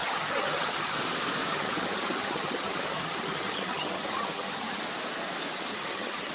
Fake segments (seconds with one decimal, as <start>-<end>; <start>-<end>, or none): 0.0-1.0; 1.5-4.8; 5.7-6.3